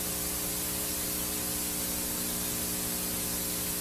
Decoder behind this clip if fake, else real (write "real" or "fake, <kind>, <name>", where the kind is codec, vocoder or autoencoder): real